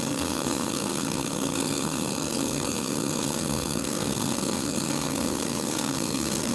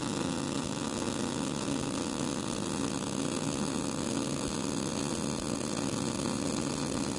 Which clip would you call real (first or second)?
second